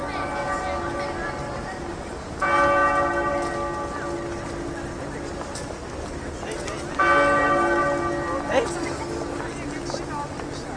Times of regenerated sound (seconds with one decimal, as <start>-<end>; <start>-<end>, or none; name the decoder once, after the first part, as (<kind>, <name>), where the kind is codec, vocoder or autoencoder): none